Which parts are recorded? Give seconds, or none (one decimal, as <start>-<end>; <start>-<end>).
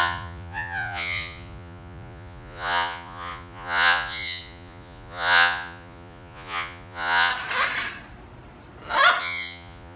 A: 7.3-9.2